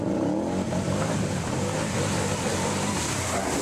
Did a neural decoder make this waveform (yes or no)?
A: no